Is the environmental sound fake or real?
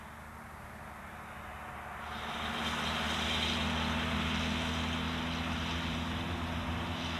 real